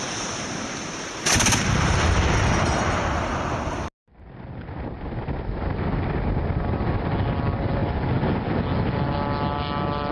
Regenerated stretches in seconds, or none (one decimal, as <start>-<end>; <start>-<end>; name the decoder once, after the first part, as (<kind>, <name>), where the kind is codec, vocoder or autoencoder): none